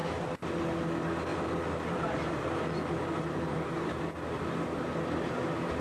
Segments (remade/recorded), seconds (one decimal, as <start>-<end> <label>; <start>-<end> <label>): 0.0-0.6 remade; 0.6-1.3 recorded; 1.3-3.7 remade; 3.7-5.8 recorded